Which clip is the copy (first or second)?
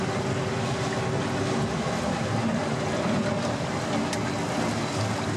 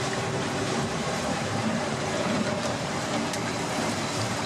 second